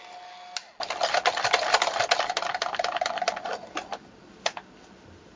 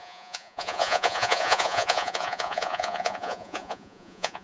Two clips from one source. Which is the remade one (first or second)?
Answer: second